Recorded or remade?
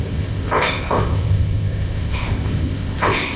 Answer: remade